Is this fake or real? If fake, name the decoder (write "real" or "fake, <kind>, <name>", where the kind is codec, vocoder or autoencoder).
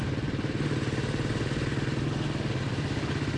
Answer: real